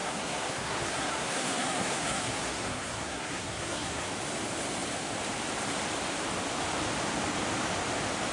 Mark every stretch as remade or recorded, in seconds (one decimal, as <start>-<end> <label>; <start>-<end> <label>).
0.0-4.1 remade; 4.1-8.3 recorded